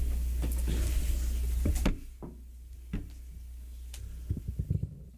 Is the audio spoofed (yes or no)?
no